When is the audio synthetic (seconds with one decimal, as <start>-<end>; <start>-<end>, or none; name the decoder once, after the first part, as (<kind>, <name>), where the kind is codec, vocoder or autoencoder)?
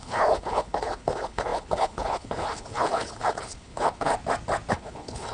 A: 0.0-4.1 (codec, HILCodec); 4.7-5.3